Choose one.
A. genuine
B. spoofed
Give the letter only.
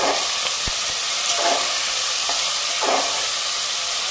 A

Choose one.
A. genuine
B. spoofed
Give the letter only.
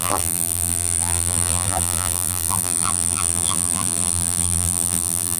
B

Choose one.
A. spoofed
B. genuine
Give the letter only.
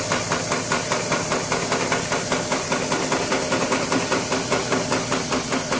B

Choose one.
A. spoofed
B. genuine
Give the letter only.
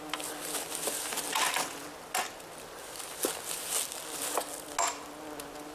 B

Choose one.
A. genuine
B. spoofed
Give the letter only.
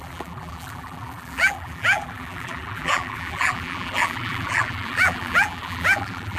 B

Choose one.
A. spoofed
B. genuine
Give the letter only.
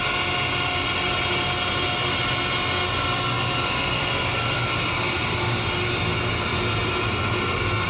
B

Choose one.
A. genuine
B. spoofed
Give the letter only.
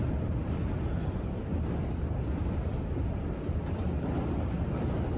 B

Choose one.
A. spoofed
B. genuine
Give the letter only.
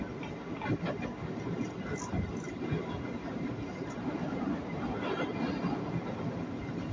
B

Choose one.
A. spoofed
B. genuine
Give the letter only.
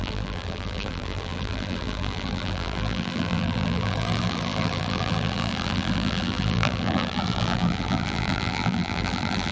A